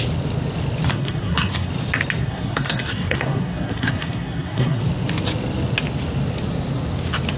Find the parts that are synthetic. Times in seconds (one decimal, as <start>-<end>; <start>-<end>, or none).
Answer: 0.9-1.7; 2.2-4.8